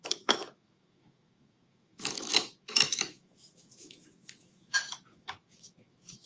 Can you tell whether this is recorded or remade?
remade